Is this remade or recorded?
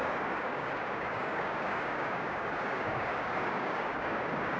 remade